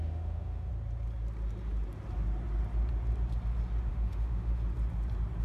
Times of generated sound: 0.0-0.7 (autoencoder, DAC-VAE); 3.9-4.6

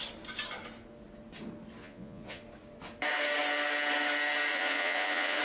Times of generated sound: 1.8-2.4 (vocoder, Vocos); 4.5-5.4

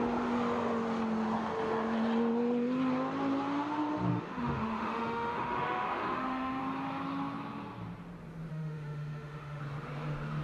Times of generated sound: 4.1-6.6 (autoencoder, DAC-VAE); 8.5-9.6

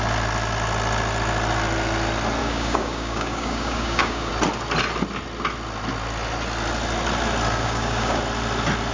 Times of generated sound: 2.4-4.3 (codec, DAC); 7.6-8.2